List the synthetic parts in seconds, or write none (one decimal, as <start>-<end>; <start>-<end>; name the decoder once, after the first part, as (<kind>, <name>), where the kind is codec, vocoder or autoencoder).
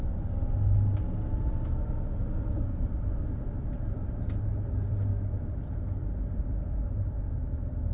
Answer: 3.3-7.5 (vocoder, BigVGAN v2)